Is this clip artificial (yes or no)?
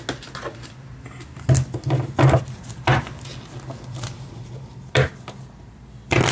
no